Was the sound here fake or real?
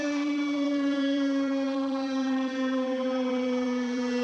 fake